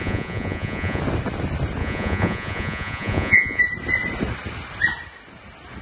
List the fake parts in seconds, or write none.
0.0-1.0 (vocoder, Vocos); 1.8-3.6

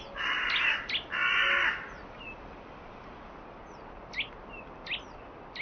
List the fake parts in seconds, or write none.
none

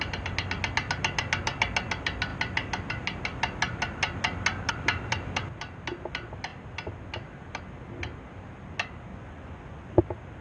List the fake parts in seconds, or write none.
9.1-10.0 (vocoder, Vocos)

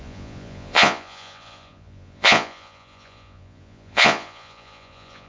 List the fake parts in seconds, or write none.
0.0-5.3 (vocoder, Vocos)

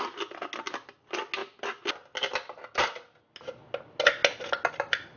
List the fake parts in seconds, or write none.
none

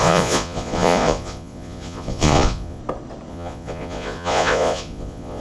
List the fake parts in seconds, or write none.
0.0-2.8 (vocoder, Vocos); 3.3-5.4